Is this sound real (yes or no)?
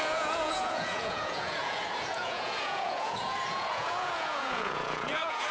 no